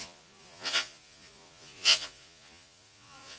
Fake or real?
fake